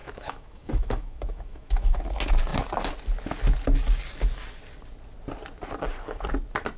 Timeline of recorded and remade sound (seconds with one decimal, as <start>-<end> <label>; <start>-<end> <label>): 0.0-2.0 remade; 2.0-6.8 recorded